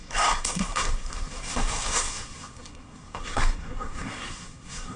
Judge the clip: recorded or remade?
remade